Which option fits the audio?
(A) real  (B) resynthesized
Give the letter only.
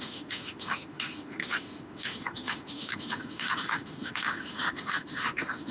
B